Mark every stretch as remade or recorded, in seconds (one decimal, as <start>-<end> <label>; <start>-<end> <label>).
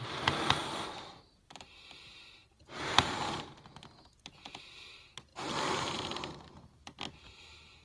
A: 0.0-0.6 recorded; 0.6-1.6 remade; 1.6-2.4 recorded; 2.4-3.4 remade; 3.4-5.3 recorded; 5.3-7.0 remade; 7.0-7.8 recorded